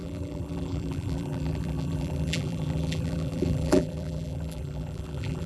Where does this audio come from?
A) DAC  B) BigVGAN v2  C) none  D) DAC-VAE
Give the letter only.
B